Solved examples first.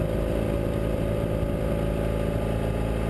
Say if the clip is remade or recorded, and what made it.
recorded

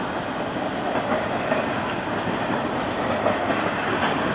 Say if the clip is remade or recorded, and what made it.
recorded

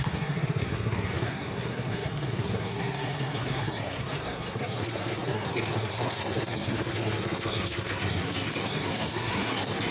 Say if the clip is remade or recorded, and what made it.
remade, codec, SNAC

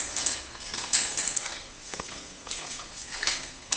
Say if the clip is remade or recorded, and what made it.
remade, codec, SNAC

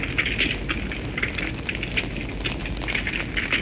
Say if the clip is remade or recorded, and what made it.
recorded